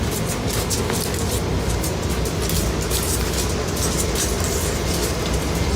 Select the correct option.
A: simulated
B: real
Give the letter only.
B